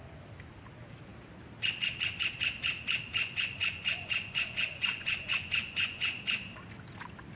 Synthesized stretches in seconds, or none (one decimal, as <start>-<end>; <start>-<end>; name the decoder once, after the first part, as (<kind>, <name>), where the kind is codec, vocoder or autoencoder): 3.2-6.2 (vocoder, Vocos)